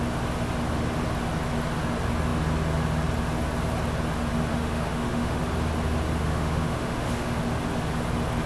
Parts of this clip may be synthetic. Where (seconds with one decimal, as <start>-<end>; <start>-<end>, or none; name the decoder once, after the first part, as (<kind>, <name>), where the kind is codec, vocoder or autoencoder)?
4.5-5.4 (autoencoder, DAC-VAE); 6.2-7.4